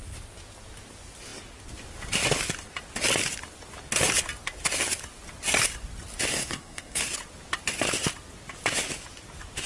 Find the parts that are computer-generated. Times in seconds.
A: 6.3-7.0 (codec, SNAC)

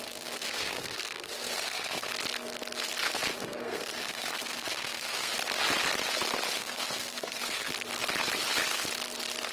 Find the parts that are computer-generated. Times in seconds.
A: 0.0-2.1 (codec, SNAC); 3.3-5.3; 6.6-7.7

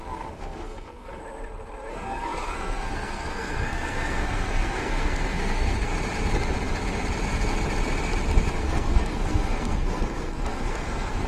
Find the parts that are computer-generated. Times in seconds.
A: 0.0-1.2 (codec, SNAC); 1.9-5.9; 8.5-11.3

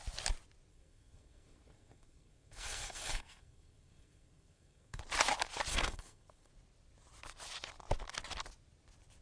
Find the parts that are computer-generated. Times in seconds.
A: 0.7-5.0 (codec, SNAC); 5.7-6.5

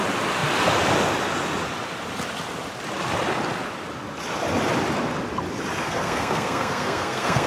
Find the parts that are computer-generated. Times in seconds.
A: 5.8-7.5 (codec, SNAC)

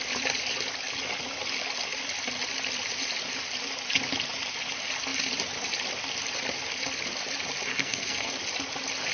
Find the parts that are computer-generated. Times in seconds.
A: 7.7-8.3 (codec, SNAC)

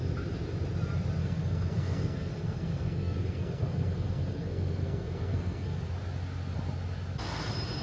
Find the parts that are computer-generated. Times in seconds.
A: 1.2-5.8 (codec, SNAC)

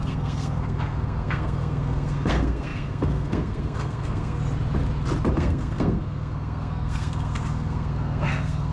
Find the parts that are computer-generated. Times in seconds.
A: 0.0-4.4 (codec, SNAC); 5.3-8.7